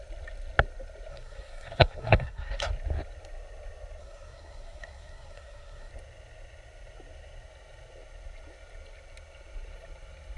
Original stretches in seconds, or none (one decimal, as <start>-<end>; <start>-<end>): 0.0-1.1; 2.7-4.0; 5.9-10.4